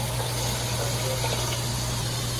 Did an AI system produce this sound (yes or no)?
no